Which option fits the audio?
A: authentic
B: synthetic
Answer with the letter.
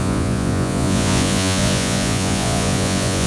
B